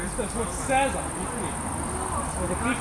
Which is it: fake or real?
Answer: real